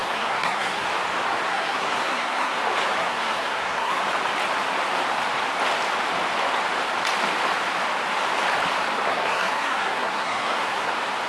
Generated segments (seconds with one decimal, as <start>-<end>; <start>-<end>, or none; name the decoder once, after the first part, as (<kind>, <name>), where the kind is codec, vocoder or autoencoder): 0.0-0.9 (codec, SNAC); 1.5-2.6; 3.0-4.0; 9.1-10.9